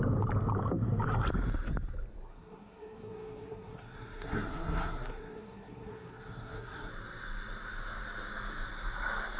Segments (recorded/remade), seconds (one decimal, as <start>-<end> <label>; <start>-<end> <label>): 0.0-2.3 recorded; 2.3-6.9 remade; 6.9-9.4 recorded